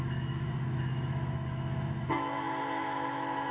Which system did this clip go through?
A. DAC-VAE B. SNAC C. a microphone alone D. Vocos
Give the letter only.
A